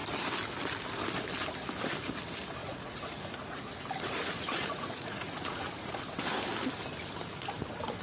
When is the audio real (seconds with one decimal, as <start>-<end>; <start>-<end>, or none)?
0.0-2.6; 3.6-4.2; 5.9-8.0